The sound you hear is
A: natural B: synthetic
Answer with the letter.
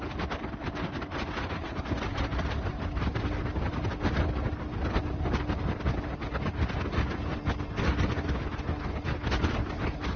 A